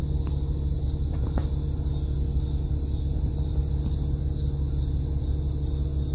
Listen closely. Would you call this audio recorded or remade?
recorded